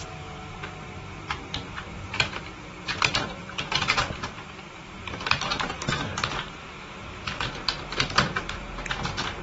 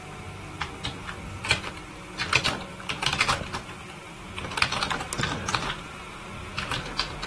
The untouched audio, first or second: second